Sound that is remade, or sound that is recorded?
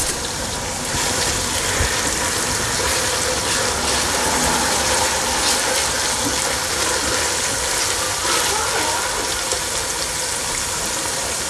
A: recorded